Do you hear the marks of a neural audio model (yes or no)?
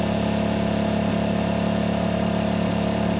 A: no